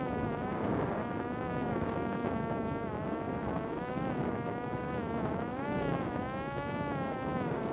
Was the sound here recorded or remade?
remade